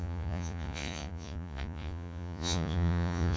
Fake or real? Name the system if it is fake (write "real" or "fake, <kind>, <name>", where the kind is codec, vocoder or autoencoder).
fake, vocoder, Vocos